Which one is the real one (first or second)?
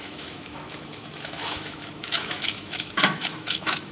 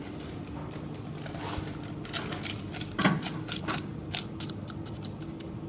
second